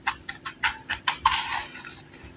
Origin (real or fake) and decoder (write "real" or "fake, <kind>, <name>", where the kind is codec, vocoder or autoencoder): real